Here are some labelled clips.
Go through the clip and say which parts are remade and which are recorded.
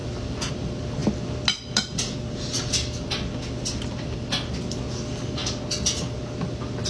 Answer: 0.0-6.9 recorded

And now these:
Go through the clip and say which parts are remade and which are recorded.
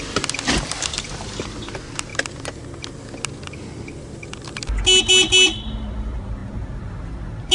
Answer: 0.0-7.5 recorded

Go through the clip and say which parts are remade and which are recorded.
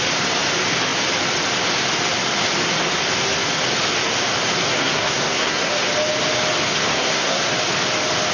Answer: 0.0-4.7 recorded; 4.7-5.7 remade; 5.7-6.9 recorded; 6.9-7.5 remade; 7.5-8.3 recorded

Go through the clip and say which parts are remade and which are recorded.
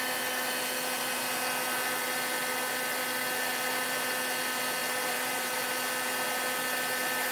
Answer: 0.0-4.8 recorded; 4.8-5.7 remade; 5.7-7.3 recorded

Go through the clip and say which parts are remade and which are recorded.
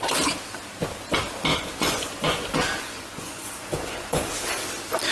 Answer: 0.0-1.5 recorded; 1.5-4.3 remade; 4.3-5.1 recorded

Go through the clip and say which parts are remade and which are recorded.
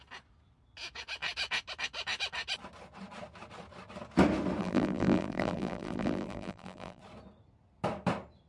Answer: 0.0-4.6 recorded; 4.6-7.0 remade; 7.0-8.5 recorded